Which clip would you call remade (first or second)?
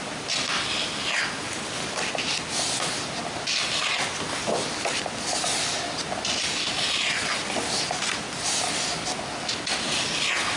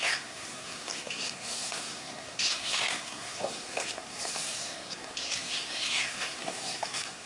second